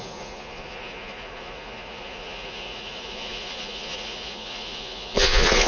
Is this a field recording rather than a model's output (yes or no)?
no